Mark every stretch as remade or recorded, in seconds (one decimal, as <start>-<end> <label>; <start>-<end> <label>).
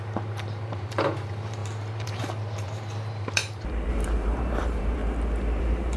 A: 0.0-5.0 remade; 5.0-5.6 recorded; 5.6-6.0 remade